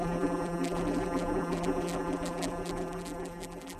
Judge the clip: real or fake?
fake